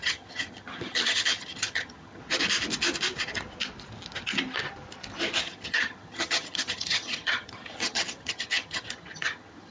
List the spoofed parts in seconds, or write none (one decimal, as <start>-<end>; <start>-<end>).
0.0-2.2; 5.4-9.7